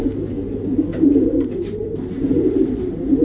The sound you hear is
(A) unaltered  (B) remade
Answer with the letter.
B